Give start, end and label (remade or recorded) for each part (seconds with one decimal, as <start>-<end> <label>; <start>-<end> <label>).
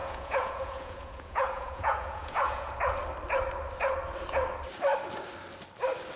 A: 0.0-2.8 remade; 2.8-6.2 recorded